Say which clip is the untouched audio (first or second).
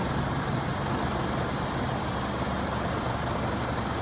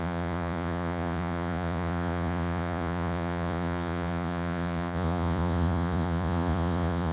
first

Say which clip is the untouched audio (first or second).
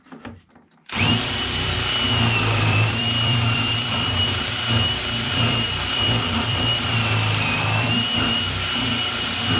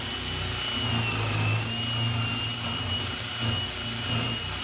second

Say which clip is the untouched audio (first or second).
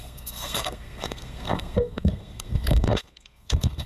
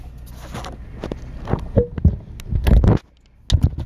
second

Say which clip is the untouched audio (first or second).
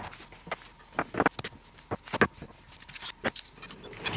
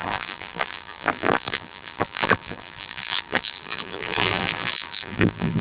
first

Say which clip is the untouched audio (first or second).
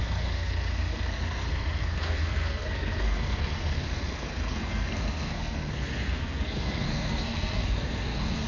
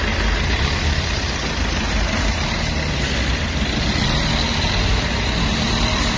second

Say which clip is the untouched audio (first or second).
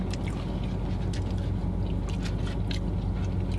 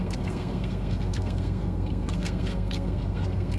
first